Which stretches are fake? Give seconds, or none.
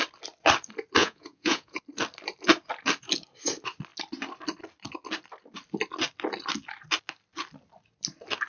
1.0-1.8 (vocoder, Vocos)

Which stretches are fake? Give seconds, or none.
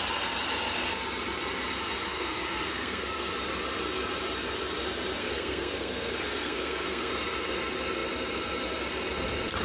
2.1-3.3 (codec, SNAC); 5.2-7.1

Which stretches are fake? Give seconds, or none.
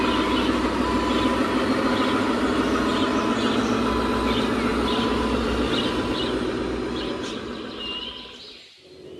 4.7-5.8 (vocoder, BigVGAN v2)